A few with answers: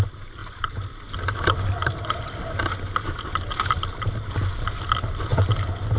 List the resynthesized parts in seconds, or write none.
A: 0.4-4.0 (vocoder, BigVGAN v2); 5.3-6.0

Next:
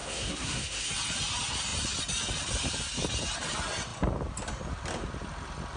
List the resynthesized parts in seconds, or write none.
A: 0.0-0.9 (codec, SNAC)